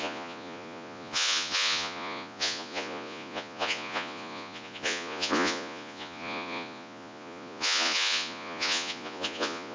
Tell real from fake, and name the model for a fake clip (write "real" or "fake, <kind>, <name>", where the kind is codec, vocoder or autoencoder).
fake, vocoder, Vocos